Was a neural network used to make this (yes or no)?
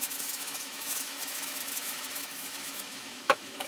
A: yes